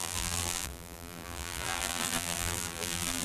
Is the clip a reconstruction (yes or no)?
yes